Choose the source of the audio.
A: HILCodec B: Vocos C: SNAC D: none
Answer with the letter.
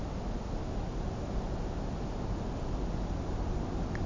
D